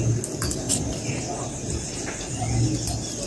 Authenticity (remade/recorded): recorded